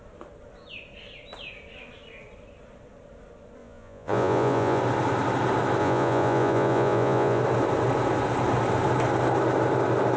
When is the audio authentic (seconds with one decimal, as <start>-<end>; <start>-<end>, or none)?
0.0-3.6; 4.8-5.8; 7.4-10.2